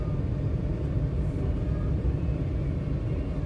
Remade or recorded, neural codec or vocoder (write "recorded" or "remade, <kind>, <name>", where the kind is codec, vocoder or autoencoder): recorded